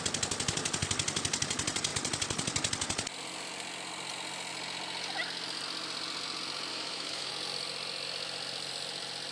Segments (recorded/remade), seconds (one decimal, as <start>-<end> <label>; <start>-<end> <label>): 0.0-6.7 recorded; 6.7-7.3 remade; 7.3-9.3 recorded

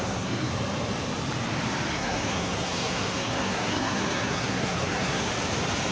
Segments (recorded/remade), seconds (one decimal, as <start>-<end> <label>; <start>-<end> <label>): 0.0-0.5 remade; 0.5-1.9 recorded; 1.9-5.3 remade; 5.3-5.9 recorded

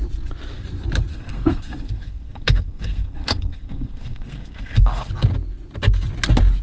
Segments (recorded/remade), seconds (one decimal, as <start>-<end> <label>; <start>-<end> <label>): 0.0-1.1 recorded; 1.1-5.1 remade; 5.1-6.6 recorded

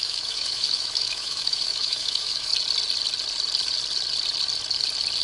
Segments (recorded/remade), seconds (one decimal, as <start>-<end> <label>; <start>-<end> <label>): 0.0-2.5 remade; 2.5-5.2 recorded

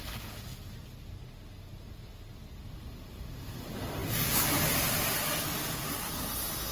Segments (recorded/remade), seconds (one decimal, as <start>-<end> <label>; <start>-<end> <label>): 0.0-6.7 recorded

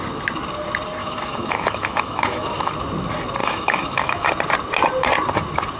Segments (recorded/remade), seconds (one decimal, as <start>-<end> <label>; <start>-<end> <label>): 0.0-1.0 recorded; 1.0-2.7 remade; 2.7-3.4 recorded; 3.4-4.3 remade; 4.3-5.8 recorded